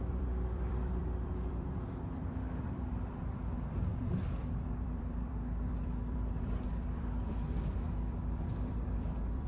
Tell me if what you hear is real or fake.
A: fake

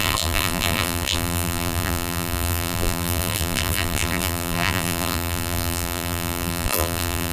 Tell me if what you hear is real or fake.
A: fake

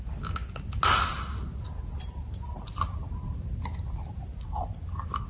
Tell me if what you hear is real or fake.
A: real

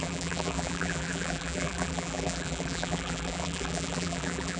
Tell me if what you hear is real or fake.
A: fake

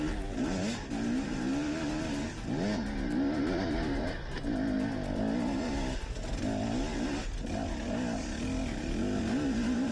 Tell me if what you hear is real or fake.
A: real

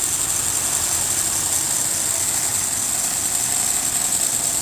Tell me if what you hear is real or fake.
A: real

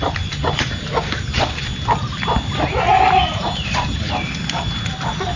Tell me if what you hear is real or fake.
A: real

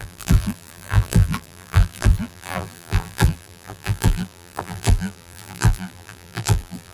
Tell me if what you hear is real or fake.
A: fake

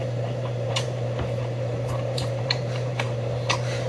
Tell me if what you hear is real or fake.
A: fake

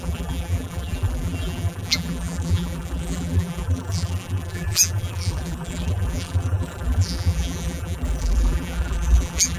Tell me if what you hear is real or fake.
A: fake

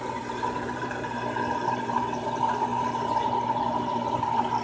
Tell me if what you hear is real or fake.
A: fake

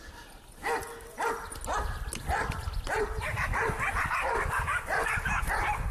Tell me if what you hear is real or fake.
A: real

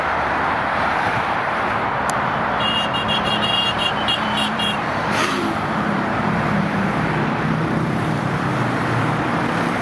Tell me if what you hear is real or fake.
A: fake